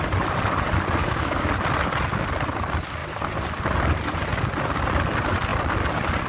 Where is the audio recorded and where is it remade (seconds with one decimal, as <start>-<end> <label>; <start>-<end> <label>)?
0.0-1.0 recorded; 1.0-1.5 remade; 1.5-6.3 recorded